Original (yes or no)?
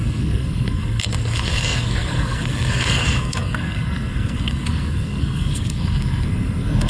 no